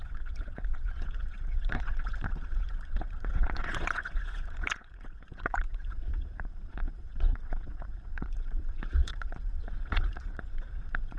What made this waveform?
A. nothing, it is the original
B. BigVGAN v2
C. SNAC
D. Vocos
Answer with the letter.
D